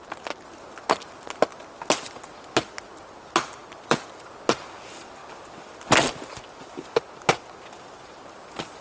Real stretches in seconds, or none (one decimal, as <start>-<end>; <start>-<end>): 0.0-3.6; 4.2-8.8